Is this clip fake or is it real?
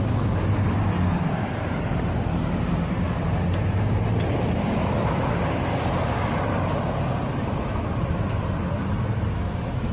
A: real